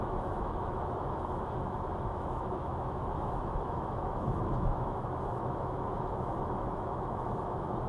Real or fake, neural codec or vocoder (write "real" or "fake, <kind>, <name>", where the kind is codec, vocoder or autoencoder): fake, autoencoder, DAC-VAE